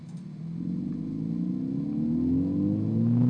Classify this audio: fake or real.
real